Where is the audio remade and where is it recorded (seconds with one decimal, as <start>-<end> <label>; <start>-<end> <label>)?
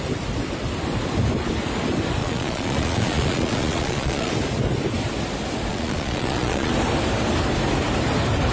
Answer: 0.0-2.2 recorded; 2.2-4.3 remade; 4.3-5.7 recorded; 5.7-6.7 remade; 6.7-8.5 recorded